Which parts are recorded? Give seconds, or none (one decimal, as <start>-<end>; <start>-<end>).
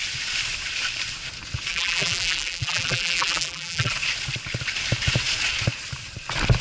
0.0-1.7; 3.9-6.6